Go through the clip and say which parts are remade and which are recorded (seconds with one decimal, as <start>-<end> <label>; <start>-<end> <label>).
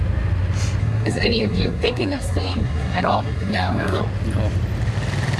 0.0-0.8 recorded; 0.8-4.0 remade; 4.0-5.4 recorded